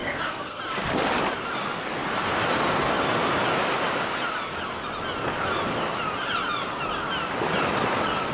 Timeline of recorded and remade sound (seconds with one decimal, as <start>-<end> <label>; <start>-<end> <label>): 0.0-0.6 remade; 0.6-8.3 recorded